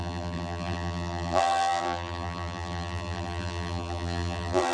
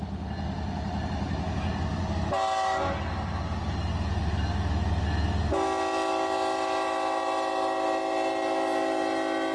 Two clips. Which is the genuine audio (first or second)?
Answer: second